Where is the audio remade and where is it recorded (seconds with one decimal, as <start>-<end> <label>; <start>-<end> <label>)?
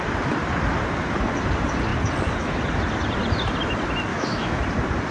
0.0-4.1 recorded; 4.1-4.6 remade; 4.6-5.1 recorded